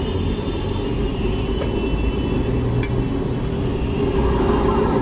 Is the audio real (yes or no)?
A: yes